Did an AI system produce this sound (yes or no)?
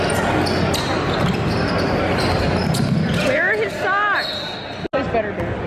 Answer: no